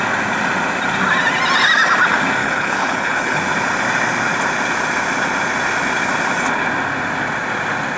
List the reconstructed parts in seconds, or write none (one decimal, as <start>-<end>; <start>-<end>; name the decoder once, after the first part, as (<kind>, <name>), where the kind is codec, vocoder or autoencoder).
2.4-3.4 (codec, HILCodec)